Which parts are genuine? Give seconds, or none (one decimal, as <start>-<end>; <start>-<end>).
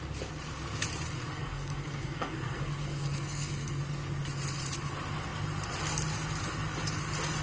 0.0-1.3; 3.8-7.4